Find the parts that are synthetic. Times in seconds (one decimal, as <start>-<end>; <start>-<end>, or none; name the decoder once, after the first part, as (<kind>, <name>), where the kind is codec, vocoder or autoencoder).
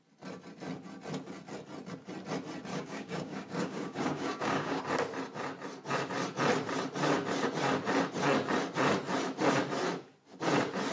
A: 2.7-4.8 (codec, DAC)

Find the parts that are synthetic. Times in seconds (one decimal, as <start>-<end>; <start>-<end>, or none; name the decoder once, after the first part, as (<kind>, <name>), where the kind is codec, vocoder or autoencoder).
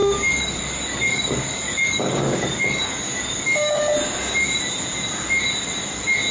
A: 0.0-3.8 (codec, DAC)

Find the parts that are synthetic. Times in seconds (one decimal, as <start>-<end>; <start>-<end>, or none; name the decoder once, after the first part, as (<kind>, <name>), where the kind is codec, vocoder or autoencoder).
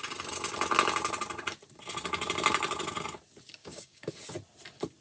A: 3.6-4.1 (codec, DAC)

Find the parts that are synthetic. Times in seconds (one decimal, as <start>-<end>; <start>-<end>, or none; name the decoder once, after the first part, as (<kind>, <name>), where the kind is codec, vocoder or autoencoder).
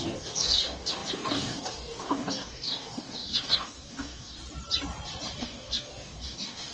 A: 0.0-4.4 (codec, DAC); 5.4-6.7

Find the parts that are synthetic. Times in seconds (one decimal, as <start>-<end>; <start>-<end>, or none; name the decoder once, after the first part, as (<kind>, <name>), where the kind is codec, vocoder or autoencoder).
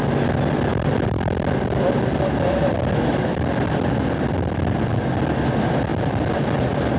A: none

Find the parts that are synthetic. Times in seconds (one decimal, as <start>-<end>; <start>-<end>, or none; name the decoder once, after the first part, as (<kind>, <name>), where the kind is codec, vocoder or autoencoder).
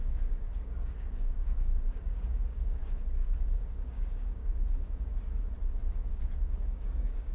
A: 0.0-5.1 (codec, DAC); 6.1-7.3